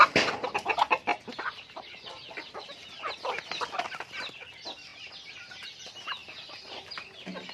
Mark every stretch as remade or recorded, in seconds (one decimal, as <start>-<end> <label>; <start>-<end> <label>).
0.0-1.1 recorded; 1.1-3.1 remade; 3.1-7.5 recorded